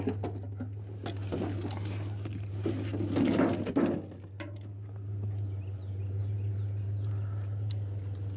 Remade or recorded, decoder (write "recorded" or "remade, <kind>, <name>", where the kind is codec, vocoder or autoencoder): recorded